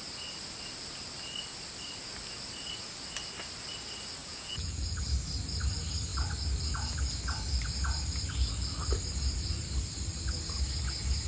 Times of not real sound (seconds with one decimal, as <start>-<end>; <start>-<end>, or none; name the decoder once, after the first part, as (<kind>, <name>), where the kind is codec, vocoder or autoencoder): 4.2-5.0 (vocoder, Vocos)